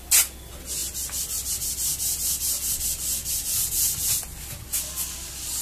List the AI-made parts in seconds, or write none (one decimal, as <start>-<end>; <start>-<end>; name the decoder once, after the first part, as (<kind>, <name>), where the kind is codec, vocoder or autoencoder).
0.8-1.5 (vocoder, BigVGAN v2); 1.9-3.7